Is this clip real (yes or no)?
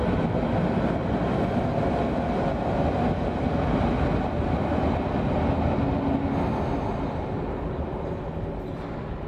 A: yes